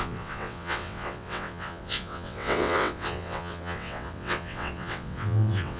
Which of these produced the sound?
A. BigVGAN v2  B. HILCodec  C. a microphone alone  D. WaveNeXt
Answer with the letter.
D